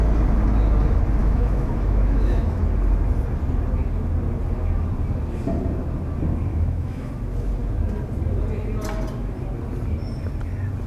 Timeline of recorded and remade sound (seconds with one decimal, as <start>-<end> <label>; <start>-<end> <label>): 0.0-1.2 recorded; 1.2-2.6 remade; 2.6-6.5 recorded; 6.5-7.1 remade; 7.1-10.9 recorded